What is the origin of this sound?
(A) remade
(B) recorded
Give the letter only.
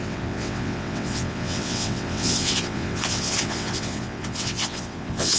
A